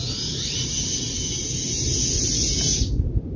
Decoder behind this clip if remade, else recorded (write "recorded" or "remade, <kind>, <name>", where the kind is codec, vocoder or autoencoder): recorded